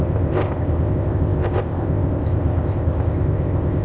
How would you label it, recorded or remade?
remade